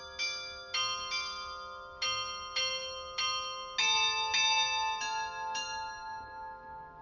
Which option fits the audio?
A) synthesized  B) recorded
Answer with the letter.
B